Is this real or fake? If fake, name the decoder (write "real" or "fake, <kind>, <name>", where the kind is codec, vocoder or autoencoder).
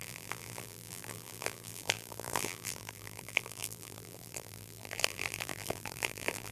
fake, vocoder, BigVGAN v2